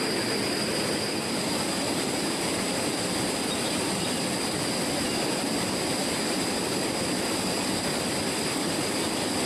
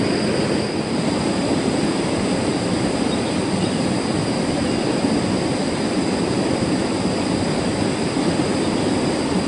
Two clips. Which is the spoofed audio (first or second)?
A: second